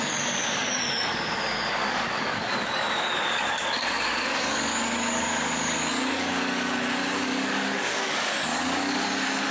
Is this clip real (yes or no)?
no